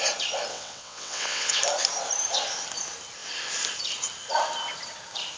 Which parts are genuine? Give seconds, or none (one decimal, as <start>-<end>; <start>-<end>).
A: 0.0-0.5; 1.6-5.4